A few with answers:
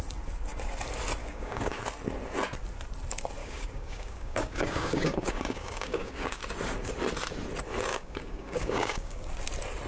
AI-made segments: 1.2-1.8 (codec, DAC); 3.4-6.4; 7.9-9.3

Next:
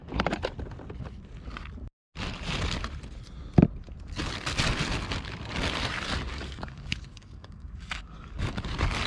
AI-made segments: 6.3-8.5 (codec, DAC)

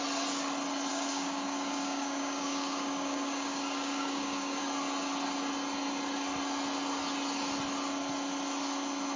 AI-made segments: 0.9-4.6 (codec, DAC)

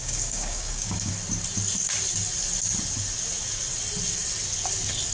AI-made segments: 0.0-1.1 (codec, DAC)

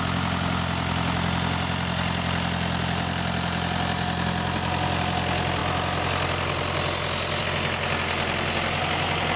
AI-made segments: none

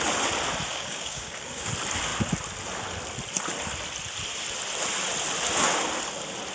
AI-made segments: 0.7-1.7 (codec, DAC)

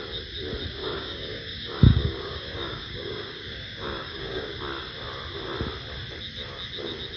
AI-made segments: 0.8-4.6 (codec, DAC)